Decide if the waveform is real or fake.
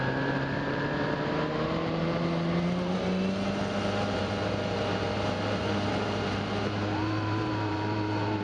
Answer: fake